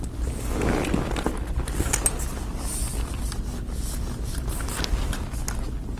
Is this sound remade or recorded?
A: recorded